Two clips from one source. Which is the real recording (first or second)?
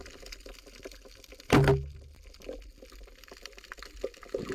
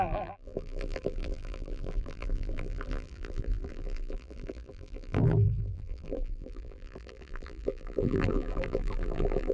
first